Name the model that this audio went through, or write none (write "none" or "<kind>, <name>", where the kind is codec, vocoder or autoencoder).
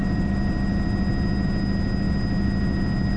none